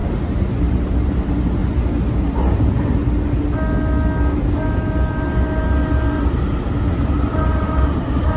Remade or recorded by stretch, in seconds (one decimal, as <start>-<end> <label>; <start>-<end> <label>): 0.0-1.6 remade; 1.6-2.2 recorded; 2.2-3.0 remade; 3.0-7.0 recorded; 7.0-8.4 remade